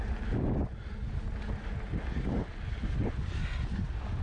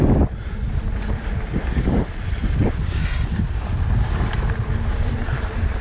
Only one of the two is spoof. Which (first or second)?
second